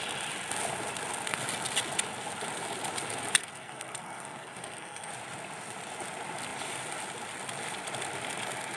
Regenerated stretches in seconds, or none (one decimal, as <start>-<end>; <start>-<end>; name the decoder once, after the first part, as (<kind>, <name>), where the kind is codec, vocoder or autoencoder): 3.4-5.1 (codec, SNAC)